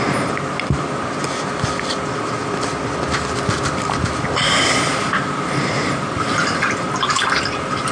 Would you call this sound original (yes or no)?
yes